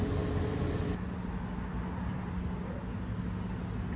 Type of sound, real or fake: real